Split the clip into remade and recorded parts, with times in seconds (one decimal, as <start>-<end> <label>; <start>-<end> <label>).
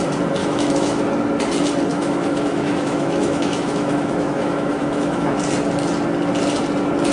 0.0-0.4 recorded; 0.4-1.0 remade; 1.0-1.9 recorded; 1.9-5.4 remade; 5.4-7.1 recorded